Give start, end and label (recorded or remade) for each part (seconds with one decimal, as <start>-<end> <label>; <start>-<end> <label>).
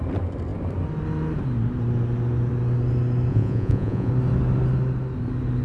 0.0-3.3 recorded; 3.3-4.1 remade; 4.1-5.6 recorded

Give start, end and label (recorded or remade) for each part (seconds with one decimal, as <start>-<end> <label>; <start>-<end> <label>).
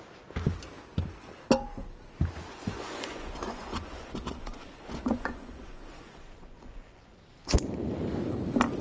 0.0-2.5 recorded; 2.5-7.2 remade; 7.2-8.8 recorded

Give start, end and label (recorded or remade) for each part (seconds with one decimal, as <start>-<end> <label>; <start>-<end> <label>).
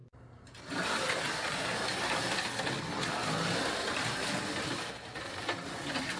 0.0-6.2 recorded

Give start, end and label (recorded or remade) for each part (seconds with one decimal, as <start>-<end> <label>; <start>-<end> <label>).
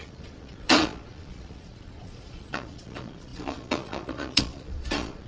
0.0-5.3 remade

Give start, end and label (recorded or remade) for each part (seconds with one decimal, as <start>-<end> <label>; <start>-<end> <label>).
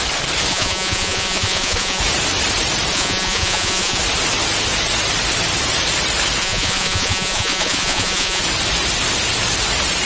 0.0-0.5 recorded; 0.5-2.0 remade; 2.0-2.9 recorded; 2.9-4.0 remade; 4.0-6.4 recorded; 6.4-8.4 remade; 8.4-10.1 recorded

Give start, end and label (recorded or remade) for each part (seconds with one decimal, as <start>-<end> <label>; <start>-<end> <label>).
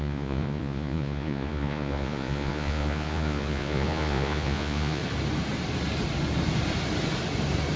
0.0-5.0 remade; 5.0-7.8 recorded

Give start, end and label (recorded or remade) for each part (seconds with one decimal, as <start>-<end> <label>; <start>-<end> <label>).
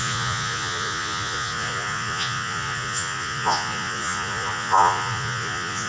0.0-5.9 remade